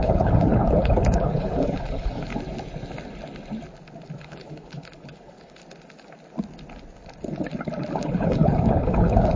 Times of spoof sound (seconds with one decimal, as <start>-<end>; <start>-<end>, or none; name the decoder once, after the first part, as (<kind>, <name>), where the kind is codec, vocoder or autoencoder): 0.0-2.3 (codec, HILCodec); 4.2-5.6; 8.0-9.4